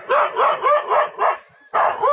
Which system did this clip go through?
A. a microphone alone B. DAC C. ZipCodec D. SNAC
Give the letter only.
A